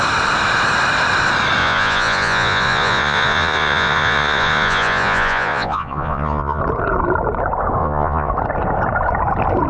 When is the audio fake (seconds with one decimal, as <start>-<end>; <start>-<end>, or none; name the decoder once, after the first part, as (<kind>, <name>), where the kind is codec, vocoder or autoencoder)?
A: 1.6-6.6 (vocoder, Vocos); 7.8-8.3